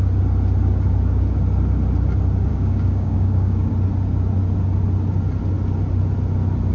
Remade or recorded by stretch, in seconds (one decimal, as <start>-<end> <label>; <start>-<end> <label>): 0.0-2.5 recorded; 2.5-3.7 remade; 3.7-6.7 recorded